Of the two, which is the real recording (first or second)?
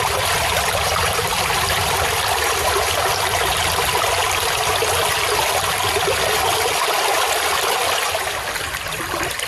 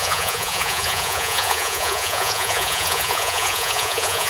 first